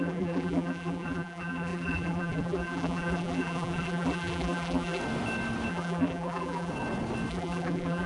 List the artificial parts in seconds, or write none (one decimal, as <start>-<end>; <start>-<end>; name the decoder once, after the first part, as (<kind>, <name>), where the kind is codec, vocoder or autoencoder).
0.0-5.0 (vocoder, BigVGAN v2); 5.7-6.7; 7.3-8.1